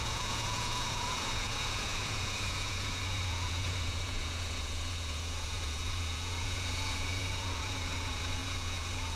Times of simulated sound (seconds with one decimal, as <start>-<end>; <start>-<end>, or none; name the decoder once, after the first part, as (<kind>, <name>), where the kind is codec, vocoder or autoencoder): 0.0-9.2 (vocoder, Vocos)